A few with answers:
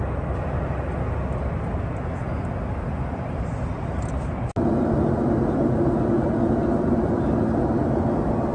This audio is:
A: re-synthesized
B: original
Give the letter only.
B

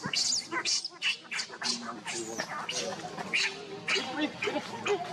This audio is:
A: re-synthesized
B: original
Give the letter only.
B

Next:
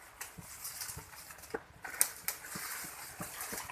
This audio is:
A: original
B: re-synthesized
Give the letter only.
A